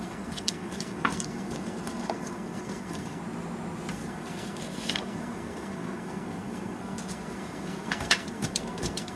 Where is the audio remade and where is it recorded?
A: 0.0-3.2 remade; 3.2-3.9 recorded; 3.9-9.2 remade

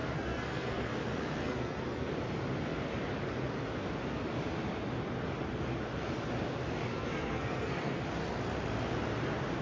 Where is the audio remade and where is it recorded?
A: 0.0-0.9 remade; 0.9-1.4 recorded; 1.4-2.1 remade; 2.1-6.9 recorded; 6.9-8.0 remade; 8.0-9.6 recorded

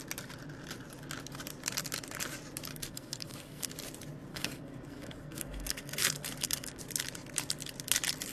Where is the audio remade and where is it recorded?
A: 0.0-2.7 recorded; 2.7-3.7 remade; 3.7-4.3 recorded; 4.3-6.8 remade; 6.8-8.3 recorded

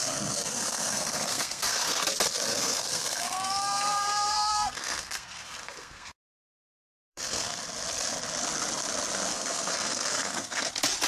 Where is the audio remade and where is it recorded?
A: 0.0-2.0 remade; 2.0-2.5 recorded; 2.5-7.6 remade; 7.6-9.3 recorded; 9.3-10.7 remade; 10.7-11.1 recorded

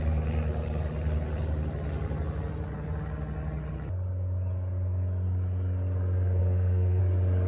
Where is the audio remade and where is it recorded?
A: 0.0-6.4 recorded; 6.4-7.0 remade; 7.0-7.5 recorded